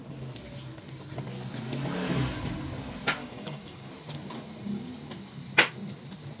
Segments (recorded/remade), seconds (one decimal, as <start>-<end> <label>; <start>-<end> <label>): 0.0-3.2 recorded; 3.2-3.9 remade; 3.9-6.4 recorded